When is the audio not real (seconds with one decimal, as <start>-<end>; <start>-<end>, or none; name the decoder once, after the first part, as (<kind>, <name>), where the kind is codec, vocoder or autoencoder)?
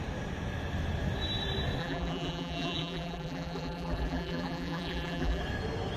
1.8-5.4 (vocoder, BigVGAN v2)